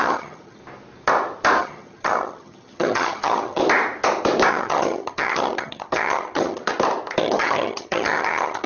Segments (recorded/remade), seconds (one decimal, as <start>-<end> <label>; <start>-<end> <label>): 0.0-0.6 remade; 0.6-1.6 recorded; 1.6-3.6 remade; 3.6-4.5 recorded; 4.5-6.6 remade; 6.6-7.2 recorded; 7.2-8.7 remade